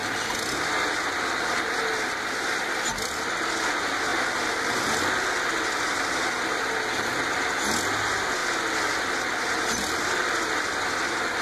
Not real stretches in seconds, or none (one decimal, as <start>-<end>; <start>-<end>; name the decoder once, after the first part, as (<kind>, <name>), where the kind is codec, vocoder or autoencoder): none

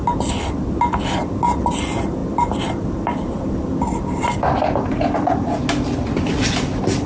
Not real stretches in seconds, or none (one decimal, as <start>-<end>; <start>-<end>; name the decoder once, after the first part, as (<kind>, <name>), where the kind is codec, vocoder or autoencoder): none

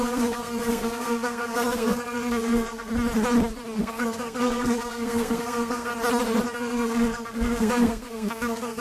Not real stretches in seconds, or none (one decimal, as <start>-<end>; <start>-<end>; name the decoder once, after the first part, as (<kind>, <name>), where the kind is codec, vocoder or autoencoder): 0.0-2.9 (codec, SNAC); 3.8-5.9; 6.5-8.8

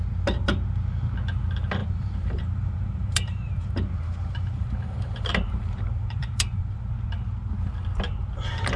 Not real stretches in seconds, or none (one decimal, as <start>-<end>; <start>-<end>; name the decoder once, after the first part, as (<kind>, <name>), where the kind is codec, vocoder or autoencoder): 1.8-6.9 (vocoder, BigVGAN v2)